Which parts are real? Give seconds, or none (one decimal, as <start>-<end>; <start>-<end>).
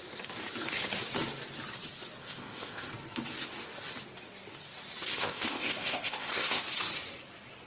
0.0-2.2; 2.9-5.1; 6.6-7.7